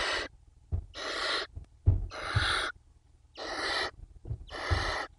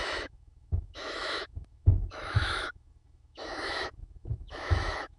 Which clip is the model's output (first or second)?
second